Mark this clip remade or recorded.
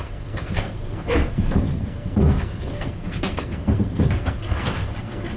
remade